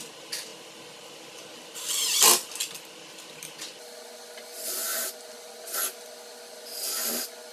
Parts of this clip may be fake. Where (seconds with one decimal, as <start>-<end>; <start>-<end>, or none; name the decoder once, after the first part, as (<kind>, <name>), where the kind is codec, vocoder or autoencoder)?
none